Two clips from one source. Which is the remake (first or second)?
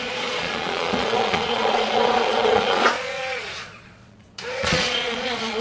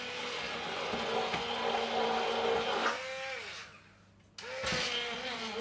first